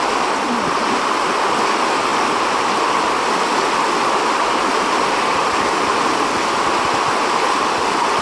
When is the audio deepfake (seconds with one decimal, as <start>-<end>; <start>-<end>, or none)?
none